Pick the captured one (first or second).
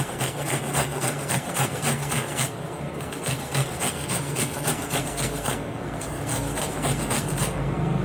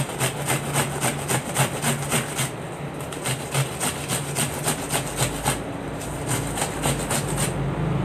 second